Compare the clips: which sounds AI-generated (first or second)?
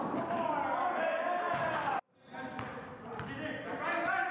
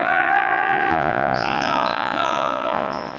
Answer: second